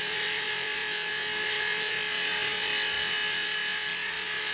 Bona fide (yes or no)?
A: yes